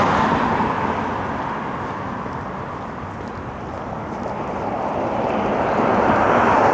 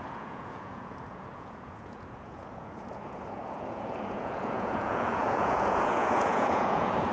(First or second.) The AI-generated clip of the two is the second